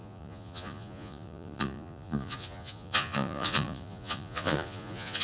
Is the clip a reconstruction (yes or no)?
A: yes